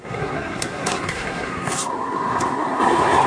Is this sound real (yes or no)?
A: no